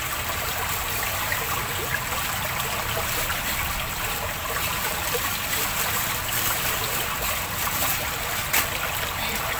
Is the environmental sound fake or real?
real